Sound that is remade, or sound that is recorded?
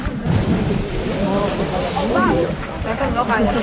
remade